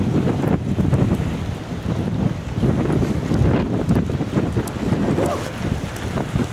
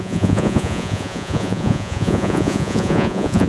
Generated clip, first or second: second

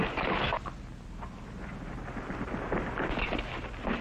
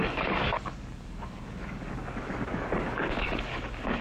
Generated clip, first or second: second